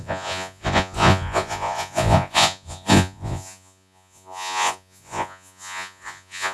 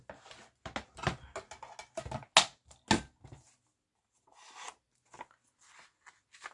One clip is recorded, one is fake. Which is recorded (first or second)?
second